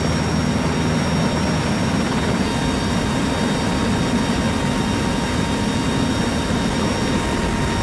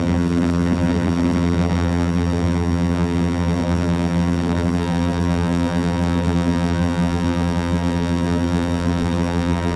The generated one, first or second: second